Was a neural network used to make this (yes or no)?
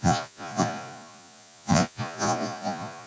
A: yes